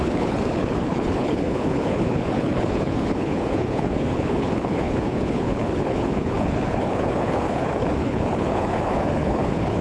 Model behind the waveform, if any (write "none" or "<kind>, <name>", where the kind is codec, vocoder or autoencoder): codec, HILCodec